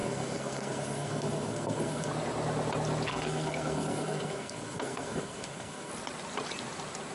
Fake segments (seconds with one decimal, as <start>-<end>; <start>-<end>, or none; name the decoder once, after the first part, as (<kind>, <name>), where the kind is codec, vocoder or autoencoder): 0.0-2.1 (codec, SNAC); 3.1-5.9